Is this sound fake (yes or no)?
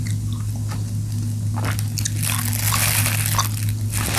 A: no